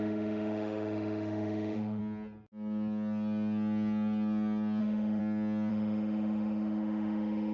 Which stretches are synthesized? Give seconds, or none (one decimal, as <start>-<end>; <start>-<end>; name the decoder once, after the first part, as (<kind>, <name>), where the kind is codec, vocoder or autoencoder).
0.0-2.0 (autoencoder, DAC-VAE); 4.8-5.2; 5.7-7.5